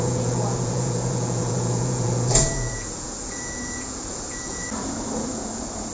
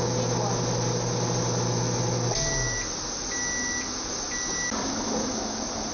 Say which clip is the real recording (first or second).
second